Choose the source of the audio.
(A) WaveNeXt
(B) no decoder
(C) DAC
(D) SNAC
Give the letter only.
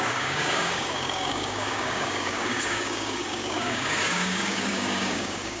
C